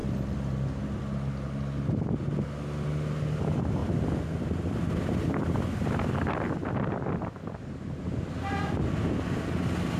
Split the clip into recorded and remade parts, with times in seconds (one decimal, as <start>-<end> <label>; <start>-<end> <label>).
0.0-10.0 recorded